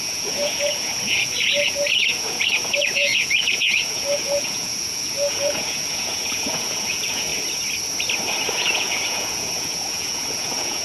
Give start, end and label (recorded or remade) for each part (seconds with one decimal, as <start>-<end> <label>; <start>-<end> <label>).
0.0-7.3 remade; 7.3-8.5 recorded; 8.5-10.8 remade

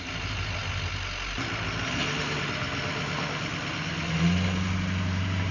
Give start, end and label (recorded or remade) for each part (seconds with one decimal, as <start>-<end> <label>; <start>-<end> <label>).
0.0-5.5 recorded

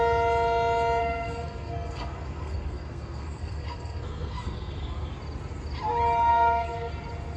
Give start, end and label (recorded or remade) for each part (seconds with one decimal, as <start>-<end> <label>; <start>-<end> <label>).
0.0-1.0 recorded; 1.0-5.1 remade; 5.1-6.3 recorded; 6.3-6.9 remade; 6.9-7.4 recorded

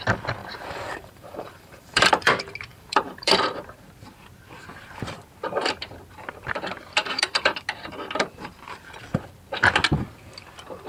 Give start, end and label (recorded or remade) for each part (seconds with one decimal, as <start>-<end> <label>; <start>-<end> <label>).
0.0-0.4 recorded; 0.4-2.3 remade; 2.3-2.7 recorded; 2.7-3.4 remade; 3.4-7.0 recorded; 7.0-7.6 remade; 7.6-10.9 recorded

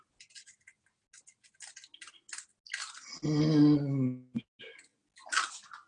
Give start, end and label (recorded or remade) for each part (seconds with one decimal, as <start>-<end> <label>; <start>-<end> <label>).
0.0-5.9 recorded

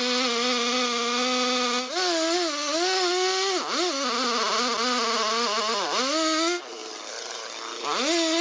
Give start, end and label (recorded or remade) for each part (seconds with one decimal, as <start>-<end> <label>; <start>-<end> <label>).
0.0-8.4 recorded

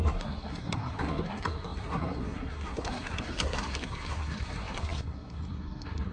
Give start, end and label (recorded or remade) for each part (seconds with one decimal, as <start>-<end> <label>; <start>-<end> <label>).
0.0-6.1 remade